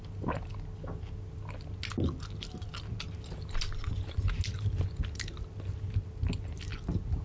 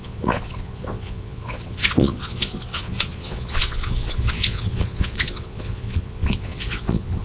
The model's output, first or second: second